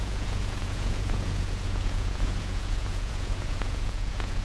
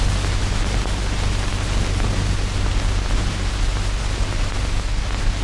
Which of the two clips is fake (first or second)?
first